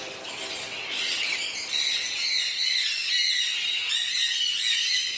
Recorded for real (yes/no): yes